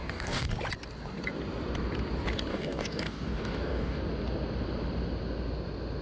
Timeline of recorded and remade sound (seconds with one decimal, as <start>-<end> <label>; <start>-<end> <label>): 0.0-0.5 remade; 0.5-2.5 recorded; 2.5-4.0 remade; 4.0-6.0 recorded